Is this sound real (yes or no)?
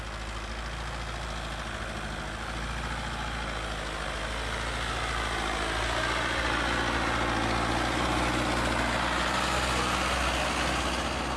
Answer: yes